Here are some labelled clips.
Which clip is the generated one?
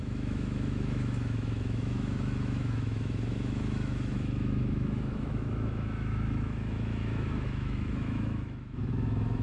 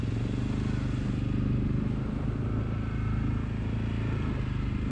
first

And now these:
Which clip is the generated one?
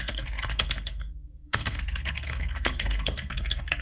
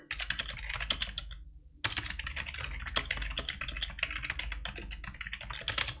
first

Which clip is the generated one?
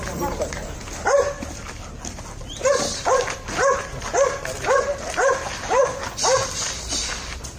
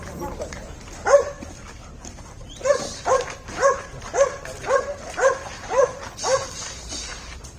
second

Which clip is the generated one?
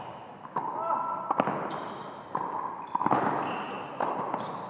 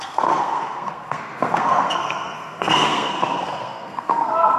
second